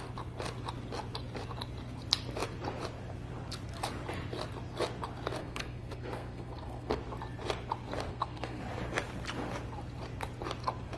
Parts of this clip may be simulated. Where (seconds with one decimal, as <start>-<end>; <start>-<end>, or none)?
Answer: 5.4-7.0; 8.1-8.6